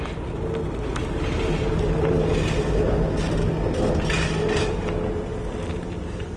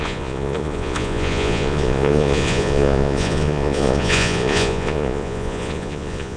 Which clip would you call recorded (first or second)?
first